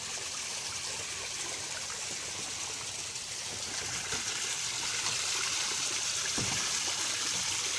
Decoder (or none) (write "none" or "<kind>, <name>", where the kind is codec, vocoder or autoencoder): none